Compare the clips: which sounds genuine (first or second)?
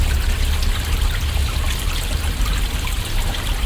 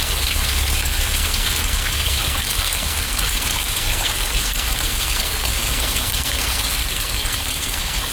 first